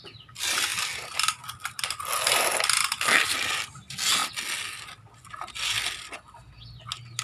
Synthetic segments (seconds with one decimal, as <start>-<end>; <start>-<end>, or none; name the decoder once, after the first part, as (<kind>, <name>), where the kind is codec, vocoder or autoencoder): none